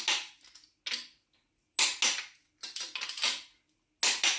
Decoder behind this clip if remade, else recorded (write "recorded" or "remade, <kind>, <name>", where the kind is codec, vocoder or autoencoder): recorded